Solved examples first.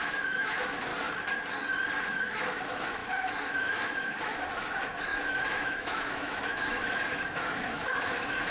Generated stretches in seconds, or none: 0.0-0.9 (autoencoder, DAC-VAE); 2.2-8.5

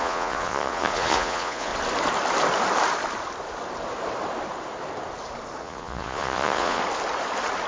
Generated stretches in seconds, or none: 0.0-1.7 (vocoder, Vocos); 5.6-6.8

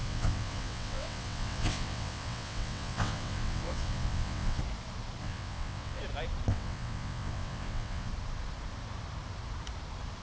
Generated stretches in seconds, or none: 0.0-4.6 (vocoder, WaveNeXt); 5.2-6.0; 6.5-8.1

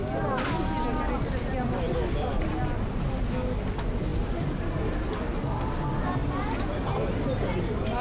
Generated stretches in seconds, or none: none